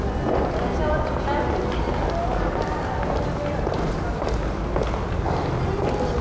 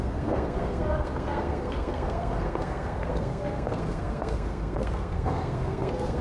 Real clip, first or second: first